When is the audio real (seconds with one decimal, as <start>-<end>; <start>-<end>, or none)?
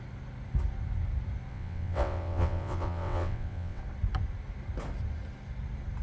0.0-1.5; 3.8-6.0